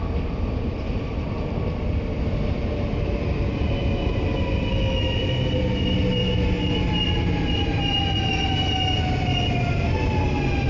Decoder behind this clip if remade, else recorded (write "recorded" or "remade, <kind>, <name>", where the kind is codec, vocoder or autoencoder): recorded